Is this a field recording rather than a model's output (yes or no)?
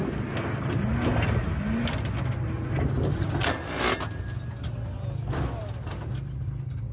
yes